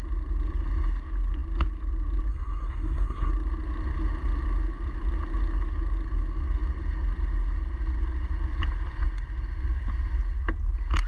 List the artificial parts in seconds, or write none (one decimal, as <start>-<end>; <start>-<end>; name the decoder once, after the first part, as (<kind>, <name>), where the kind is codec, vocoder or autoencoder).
2.3-3.3 (codec, SNAC)